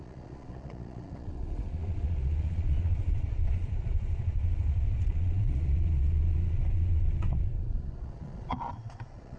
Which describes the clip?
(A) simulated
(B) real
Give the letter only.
A